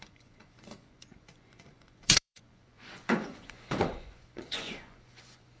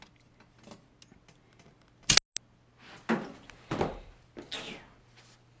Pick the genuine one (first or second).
second